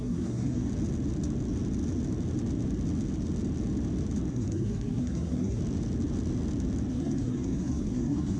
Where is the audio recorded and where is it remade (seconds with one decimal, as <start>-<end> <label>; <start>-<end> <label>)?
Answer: 0.0-0.7 remade; 0.7-4.3 recorded; 4.3-5.6 remade; 5.6-6.9 recorded; 6.9-8.4 remade